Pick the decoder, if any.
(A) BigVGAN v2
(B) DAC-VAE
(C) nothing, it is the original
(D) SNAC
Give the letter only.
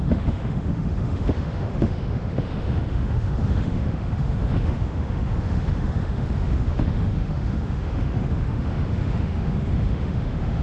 B